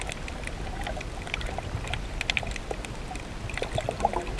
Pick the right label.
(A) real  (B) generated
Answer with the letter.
A